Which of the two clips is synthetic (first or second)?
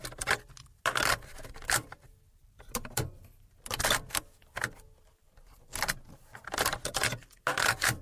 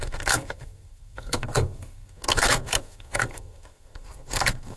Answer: second